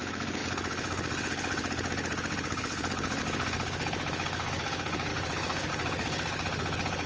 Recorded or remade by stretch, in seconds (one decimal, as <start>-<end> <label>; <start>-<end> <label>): 0.0-7.1 remade